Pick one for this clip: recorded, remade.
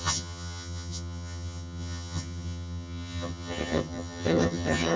remade